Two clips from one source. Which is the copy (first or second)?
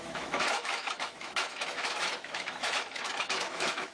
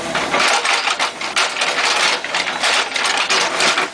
first